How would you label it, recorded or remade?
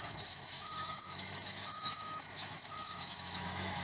remade